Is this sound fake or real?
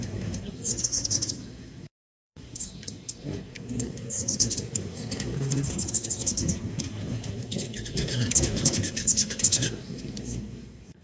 fake